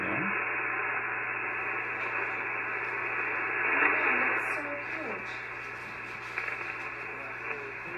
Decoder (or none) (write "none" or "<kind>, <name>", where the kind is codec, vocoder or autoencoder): none